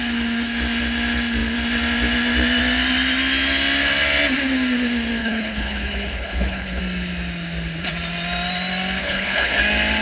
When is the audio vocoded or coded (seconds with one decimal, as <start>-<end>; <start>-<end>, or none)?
5.2-6.8; 9.0-9.6